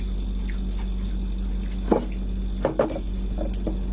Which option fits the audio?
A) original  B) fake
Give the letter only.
A